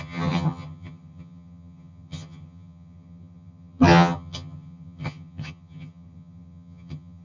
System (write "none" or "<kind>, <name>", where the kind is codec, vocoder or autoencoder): vocoder, HiFi-GAN